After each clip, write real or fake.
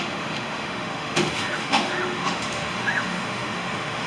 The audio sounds fake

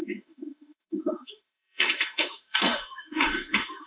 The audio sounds fake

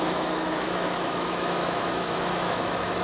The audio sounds fake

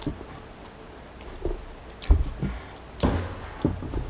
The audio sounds real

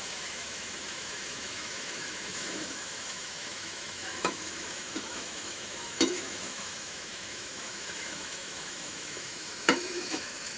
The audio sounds fake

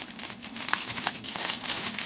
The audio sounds fake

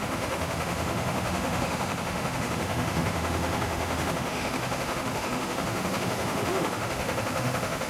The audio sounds fake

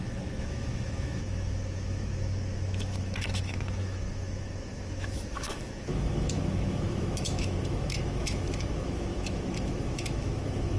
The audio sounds fake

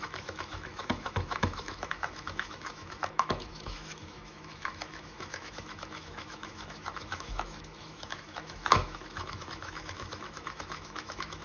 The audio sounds fake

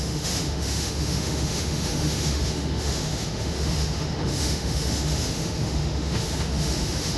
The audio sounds fake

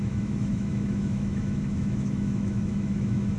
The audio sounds fake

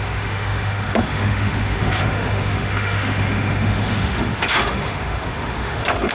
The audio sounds fake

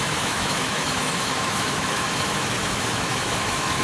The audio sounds fake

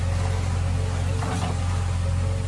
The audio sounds real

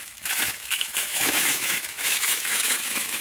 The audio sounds fake